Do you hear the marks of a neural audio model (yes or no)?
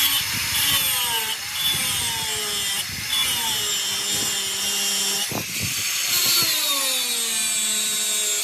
no